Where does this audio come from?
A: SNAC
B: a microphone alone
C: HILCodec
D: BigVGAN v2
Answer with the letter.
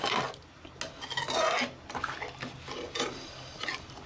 B